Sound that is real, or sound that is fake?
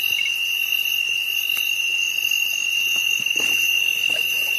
real